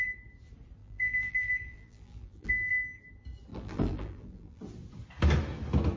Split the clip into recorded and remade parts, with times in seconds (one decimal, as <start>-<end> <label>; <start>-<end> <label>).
0.0-0.8 recorded; 0.8-2.5 remade; 2.5-3.5 recorded; 3.5-4.6 remade; 4.6-6.0 recorded